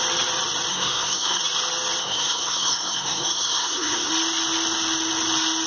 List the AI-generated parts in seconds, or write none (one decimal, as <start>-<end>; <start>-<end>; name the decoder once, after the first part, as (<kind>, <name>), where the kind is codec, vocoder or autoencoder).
0.7-1.4 (codec, SNAC); 2.0-4.1